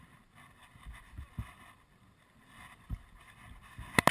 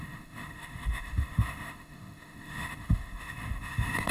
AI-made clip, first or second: second